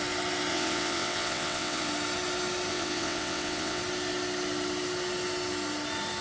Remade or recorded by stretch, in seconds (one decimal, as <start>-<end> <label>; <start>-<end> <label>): 0.0-0.5 recorded; 0.5-1.9 remade; 1.9-2.7 recorded; 2.7-3.8 remade; 3.8-6.2 recorded